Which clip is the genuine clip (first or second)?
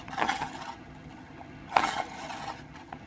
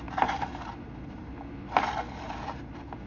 second